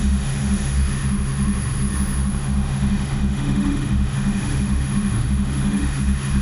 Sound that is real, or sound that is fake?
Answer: fake